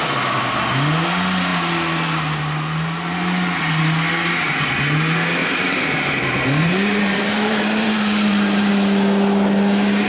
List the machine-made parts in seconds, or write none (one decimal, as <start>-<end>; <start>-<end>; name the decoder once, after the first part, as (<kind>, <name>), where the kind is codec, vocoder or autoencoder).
5.4-8.7 (vocoder, BigVGAN v2)